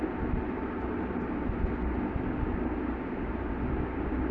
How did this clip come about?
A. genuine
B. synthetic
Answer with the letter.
A